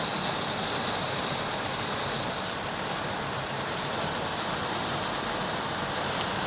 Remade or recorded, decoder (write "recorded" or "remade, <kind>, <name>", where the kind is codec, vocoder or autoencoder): recorded